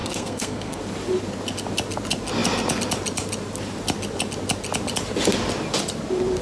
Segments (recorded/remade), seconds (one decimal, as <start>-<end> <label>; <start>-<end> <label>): 0.0-0.8 remade; 0.8-6.4 recorded